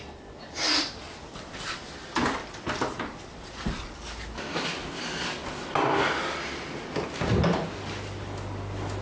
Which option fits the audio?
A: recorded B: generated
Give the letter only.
A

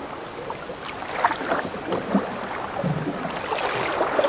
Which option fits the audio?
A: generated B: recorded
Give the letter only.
B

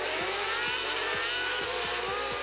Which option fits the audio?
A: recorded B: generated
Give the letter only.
A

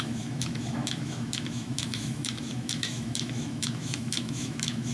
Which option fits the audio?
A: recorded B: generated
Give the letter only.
B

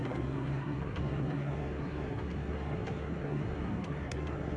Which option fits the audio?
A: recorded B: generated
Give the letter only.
B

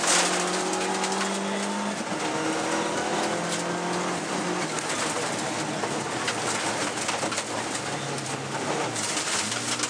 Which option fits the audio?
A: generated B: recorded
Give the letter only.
B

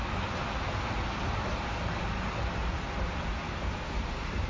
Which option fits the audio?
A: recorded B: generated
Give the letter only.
A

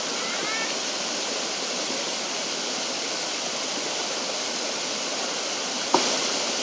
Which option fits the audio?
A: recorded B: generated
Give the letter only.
A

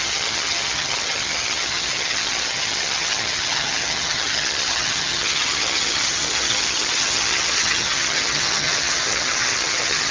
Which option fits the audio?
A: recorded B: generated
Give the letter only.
B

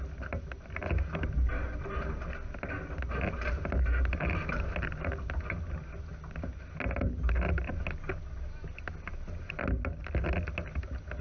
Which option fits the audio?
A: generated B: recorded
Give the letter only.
B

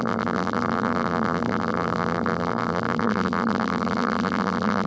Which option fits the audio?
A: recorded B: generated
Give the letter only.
B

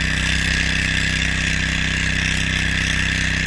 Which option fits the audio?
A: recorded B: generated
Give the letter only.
A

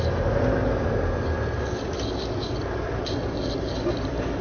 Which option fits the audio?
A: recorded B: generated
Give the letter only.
A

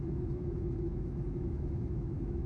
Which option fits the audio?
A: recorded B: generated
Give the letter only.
B